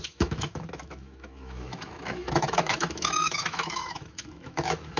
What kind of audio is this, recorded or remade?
remade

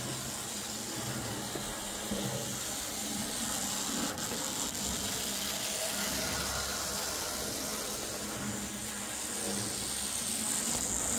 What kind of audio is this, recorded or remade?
recorded